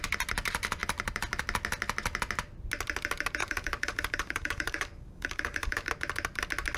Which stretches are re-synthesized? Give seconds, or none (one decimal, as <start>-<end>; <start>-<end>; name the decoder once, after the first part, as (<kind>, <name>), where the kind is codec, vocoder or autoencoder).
3.4-5.9 (codec, DAC)